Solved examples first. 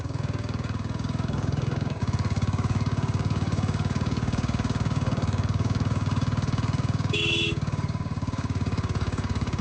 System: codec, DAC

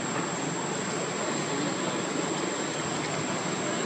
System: none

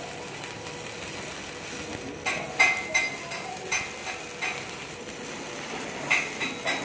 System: none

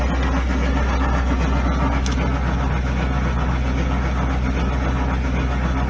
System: none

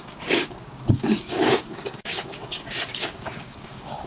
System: codec, DAC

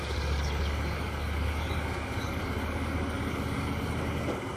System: codec, DAC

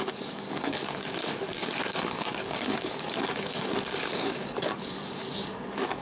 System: codec, DAC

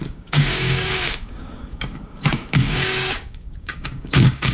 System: codec, DAC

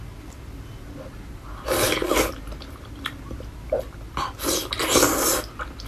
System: none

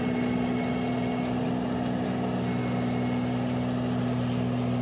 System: none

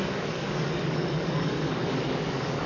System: codec, DAC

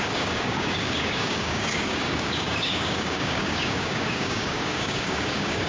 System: codec, DAC